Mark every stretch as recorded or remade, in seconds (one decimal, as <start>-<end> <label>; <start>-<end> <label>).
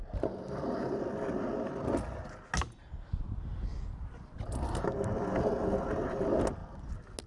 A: 0.0-7.3 recorded